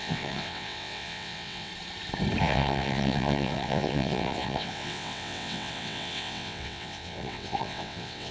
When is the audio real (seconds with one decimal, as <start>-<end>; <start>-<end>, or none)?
1.7-2.4